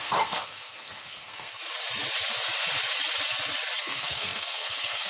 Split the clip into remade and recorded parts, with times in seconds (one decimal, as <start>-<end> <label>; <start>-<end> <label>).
0.0-1.6 remade; 1.6-3.8 recorded; 3.8-5.1 remade